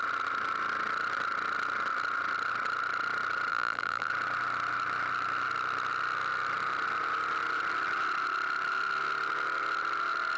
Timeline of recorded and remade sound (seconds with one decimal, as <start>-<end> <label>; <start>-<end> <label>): 0.0-3.5 recorded; 3.5-4.1 remade; 4.1-10.4 recorded